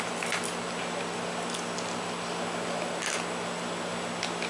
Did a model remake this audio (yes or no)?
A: no